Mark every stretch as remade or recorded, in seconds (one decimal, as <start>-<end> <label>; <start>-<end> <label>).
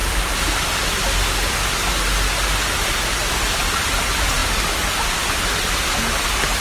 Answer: 0.0-6.6 recorded